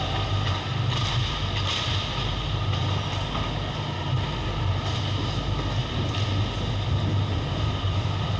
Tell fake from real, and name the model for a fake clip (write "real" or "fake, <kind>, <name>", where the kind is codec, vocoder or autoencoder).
real